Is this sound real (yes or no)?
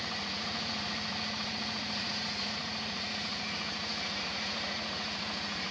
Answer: no